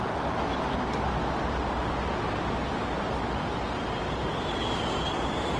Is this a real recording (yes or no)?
yes